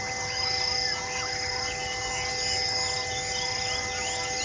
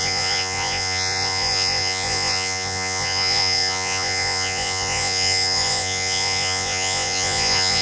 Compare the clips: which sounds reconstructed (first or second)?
second